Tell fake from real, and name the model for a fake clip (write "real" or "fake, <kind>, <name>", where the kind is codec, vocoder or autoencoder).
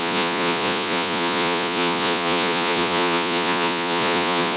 fake, vocoder, Vocos